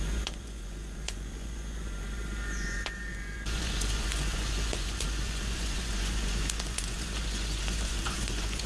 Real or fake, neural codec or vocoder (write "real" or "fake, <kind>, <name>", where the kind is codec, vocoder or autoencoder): fake, vocoder, Vocos